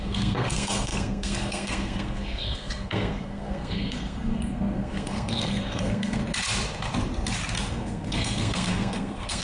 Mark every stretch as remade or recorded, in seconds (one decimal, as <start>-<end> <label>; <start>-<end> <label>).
0.0-6.2 remade; 6.2-7.7 recorded; 7.7-9.4 remade